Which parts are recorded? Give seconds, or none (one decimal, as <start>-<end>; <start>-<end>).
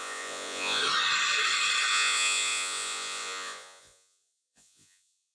0.8-1.9